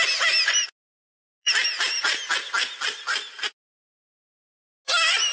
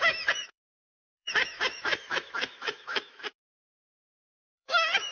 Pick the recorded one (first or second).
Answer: first